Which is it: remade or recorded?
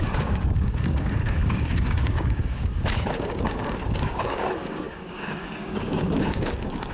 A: remade